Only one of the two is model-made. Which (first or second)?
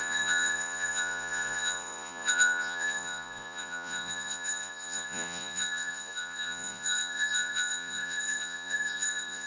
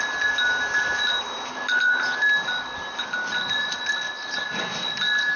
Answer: first